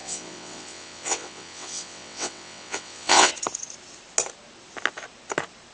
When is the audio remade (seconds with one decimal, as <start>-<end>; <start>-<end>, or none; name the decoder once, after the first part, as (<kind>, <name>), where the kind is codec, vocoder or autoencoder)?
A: 0.0-3.3 (vocoder, WaveNeXt)

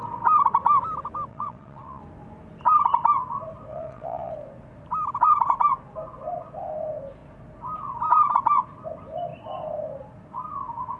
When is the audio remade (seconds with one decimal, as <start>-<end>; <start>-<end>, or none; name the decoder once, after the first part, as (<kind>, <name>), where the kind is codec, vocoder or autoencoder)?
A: 1.3-2.0 (vocoder, WaveNeXt); 3.7-4.3

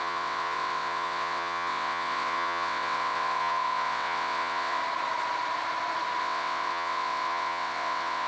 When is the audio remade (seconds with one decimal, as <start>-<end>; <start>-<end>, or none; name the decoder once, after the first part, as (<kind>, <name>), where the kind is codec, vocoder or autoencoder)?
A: 0.0-4.8 (vocoder, WaveNeXt); 6.2-8.3

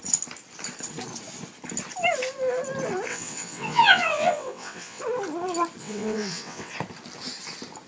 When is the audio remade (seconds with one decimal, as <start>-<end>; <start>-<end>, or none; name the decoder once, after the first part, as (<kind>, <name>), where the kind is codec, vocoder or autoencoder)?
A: 3.1-5.0 (vocoder, WaveNeXt); 5.8-6.7

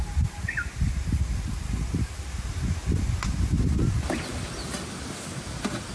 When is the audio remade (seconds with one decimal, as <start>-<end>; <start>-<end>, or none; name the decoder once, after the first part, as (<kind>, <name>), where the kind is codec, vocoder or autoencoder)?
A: none